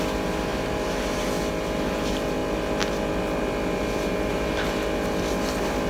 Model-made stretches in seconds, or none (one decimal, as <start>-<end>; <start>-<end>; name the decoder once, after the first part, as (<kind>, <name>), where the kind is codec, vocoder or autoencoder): 0.5-1.3 (vocoder, BigVGAN v2)